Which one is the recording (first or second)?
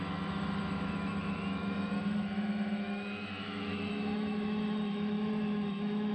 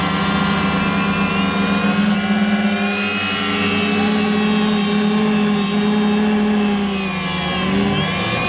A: second